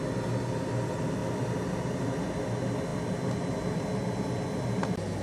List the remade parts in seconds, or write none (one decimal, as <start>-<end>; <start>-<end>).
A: none